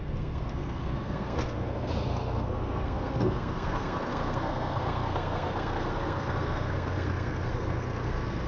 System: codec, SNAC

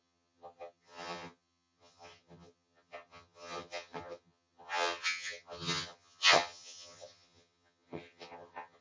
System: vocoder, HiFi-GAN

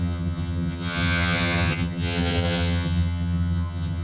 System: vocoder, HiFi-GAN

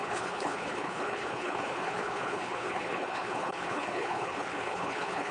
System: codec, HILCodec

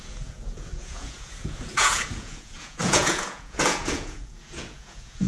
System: vocoder, Vocos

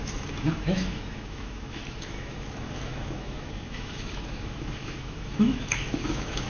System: autoencoder, DAC-VAE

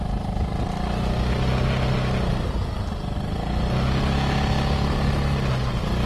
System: none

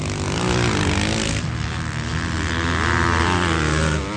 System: none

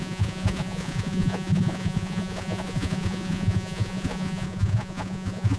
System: vocoder, Vocos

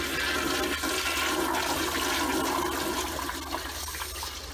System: none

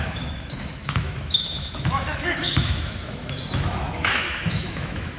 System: autoencoder, DAC-VAE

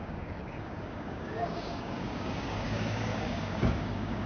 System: codec, DAC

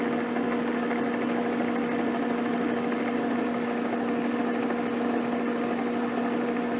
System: none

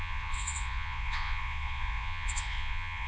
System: vocoder, Vocos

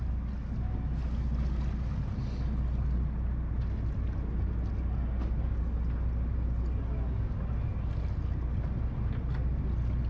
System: none